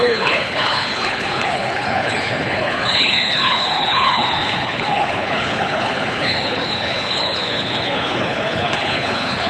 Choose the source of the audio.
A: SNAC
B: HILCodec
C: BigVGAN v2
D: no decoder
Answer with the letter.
B